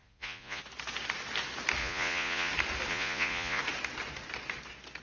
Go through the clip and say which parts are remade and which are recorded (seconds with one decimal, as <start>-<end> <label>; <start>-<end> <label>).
0.0-0.6 remade; 0.6-1.8 recorded; 1.8-2.5 remade; 2.5-2.9 recorded; 2.9-3.6 remade; 3.6-5.0 recorded